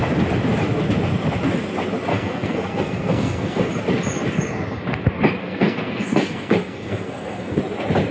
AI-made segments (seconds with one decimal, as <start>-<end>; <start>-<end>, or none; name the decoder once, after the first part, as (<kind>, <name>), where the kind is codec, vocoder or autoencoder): 2.1-3.7 (codec, SNAC); 5.4-7.6